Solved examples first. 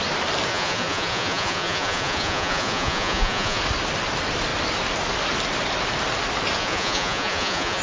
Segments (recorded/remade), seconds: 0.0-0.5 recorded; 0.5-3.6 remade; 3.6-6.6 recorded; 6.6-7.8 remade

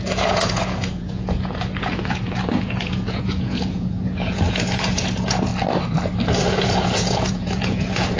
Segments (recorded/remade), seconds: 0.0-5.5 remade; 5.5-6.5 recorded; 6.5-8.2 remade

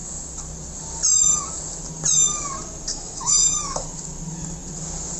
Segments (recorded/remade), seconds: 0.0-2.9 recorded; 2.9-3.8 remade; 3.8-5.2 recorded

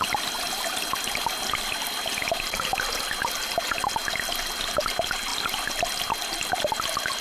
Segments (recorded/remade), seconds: 0.0-7.2 recorded

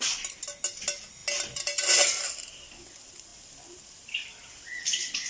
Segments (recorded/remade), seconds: 0.0-5.3 recorded

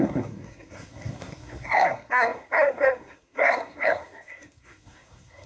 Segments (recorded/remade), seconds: 0.0-5.5 remade

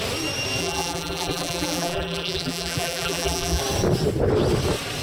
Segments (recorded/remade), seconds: 0.0-0.6 recorded; 0.6-3.6 remade; 3.6-5.0 recorded

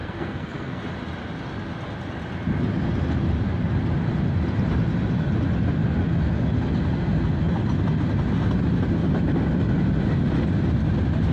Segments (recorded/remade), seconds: 0.0-0.8 remade; 0.8-11.3 recorded